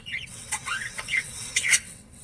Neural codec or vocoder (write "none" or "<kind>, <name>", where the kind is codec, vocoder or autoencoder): vocoder, WaveNeXt